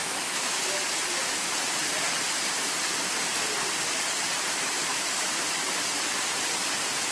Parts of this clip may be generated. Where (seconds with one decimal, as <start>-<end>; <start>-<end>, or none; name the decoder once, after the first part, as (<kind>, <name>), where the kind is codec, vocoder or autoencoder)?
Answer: 0.0-0.6 (autoencoder, DAC-VAE); 4.8-5.4